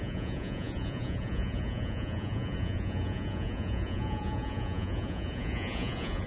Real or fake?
fake